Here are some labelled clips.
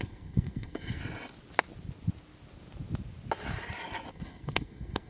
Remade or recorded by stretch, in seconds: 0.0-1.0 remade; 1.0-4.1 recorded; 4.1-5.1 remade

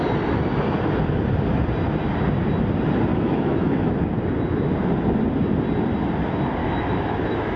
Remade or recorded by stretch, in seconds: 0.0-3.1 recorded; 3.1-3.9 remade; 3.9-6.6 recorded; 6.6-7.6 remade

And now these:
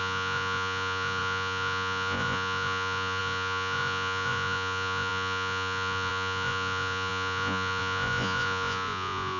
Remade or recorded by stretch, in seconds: 0.0-9.4 remade

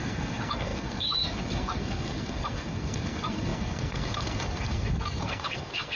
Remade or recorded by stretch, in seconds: 0.0-6.0 remade

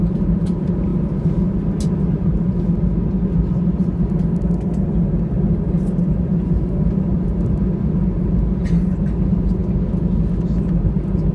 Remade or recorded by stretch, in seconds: 0.0-0.9 remade; 0.9-5.4 recorded; 5.4-9.6 remade; 9.6-10.6 recorded; 10.6-11.3 remade